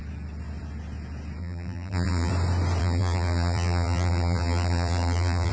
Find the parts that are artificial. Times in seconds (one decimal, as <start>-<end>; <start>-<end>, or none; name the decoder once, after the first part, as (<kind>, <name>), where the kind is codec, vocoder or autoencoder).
1.4-2.3 (vocoder, BigVGAN v2); 2.8-5.5